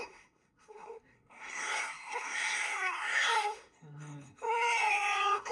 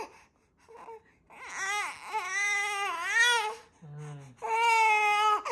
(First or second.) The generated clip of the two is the first